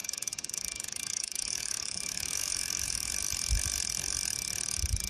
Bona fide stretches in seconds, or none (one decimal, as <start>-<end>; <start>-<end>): 3.1-5.1